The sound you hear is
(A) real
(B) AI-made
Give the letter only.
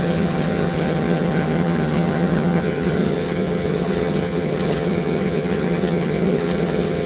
B